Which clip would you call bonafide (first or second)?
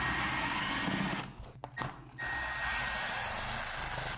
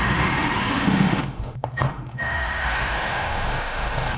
first